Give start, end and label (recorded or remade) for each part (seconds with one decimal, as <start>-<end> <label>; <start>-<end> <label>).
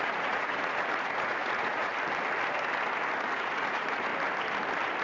0.0-1.9 remade; 1.9-3.3 recorded; 3.3-4.1 remade; 4.1-5.0 recorded